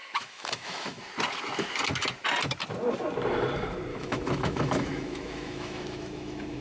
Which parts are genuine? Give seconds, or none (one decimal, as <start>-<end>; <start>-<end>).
1.0-3.9